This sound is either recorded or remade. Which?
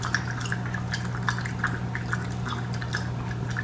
recorded